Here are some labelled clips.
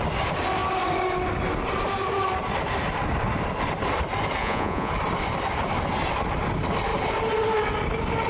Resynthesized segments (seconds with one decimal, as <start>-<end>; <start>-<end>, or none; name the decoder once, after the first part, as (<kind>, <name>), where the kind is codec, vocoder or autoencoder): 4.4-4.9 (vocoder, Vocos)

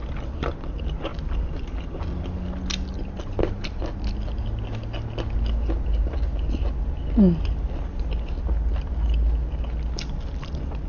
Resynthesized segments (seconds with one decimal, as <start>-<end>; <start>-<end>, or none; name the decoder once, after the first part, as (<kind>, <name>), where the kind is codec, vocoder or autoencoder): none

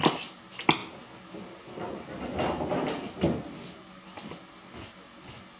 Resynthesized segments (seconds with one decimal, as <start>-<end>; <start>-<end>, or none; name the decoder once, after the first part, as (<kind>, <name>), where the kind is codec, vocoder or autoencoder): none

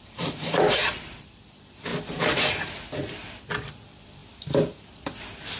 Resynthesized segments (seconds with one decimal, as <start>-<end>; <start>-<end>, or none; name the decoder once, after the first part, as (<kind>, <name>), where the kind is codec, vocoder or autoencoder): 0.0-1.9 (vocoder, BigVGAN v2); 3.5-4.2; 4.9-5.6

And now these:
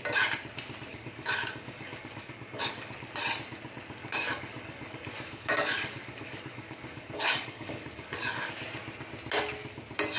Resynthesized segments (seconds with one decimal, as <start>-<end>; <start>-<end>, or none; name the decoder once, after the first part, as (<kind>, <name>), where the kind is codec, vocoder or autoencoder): 0.9-2.9 (codec, DAC); 4.0-8.5

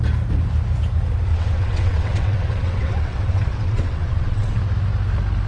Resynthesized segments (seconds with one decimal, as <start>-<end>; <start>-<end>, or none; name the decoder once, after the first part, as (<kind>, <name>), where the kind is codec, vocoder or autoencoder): 1.3-4.6 (vocoder, WaveNeXt)

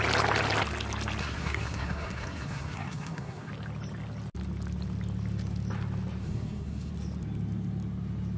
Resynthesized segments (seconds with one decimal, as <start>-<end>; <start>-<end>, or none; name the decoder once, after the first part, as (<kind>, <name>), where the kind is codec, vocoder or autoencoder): 1.2-3.5 (codec, SNAC); 6.2-6.9